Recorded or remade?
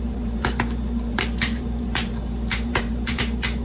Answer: remade